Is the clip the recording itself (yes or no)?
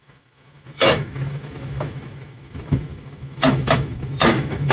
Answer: no